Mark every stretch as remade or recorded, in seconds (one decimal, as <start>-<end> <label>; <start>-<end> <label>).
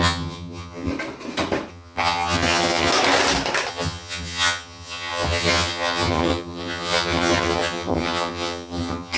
0.0-0.9 remade; 0.9-1.7 recorded; 1.7-2.9 remade; 2.9-3.7 recorded; 3.7-9.2 remade